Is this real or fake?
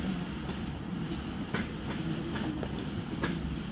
real